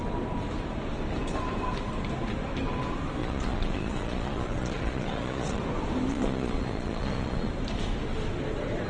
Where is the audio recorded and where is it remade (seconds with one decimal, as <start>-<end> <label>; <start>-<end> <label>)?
0.0-3.2 recorded; 3.2-5.6 remade; 5.6-6.1 recorded; 6.1-7.5 remade; 7.5-8.9 recorded